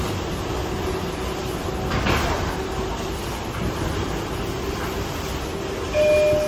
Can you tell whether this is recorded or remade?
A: recorded